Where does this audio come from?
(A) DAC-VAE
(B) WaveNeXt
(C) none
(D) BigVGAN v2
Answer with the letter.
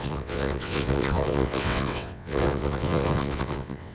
B